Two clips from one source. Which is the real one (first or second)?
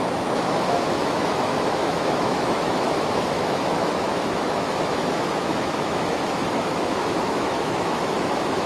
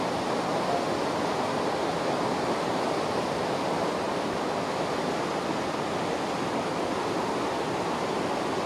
second